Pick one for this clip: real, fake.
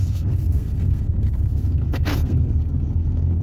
fake